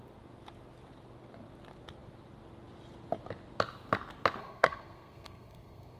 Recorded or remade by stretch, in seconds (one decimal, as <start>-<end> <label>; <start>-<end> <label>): 0.0-4.4 recorded; 4.4-6.0 remade